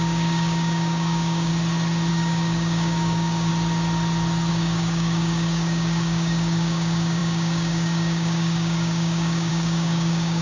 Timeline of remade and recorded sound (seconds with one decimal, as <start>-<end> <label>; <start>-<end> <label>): 0.0-1.5 remade; 1.5-2.1 recorded; 2.1-3.5 remade; 3.5-4.5 recorded; 4.5-10.4 remade